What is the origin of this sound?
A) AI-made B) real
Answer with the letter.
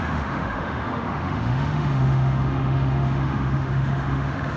A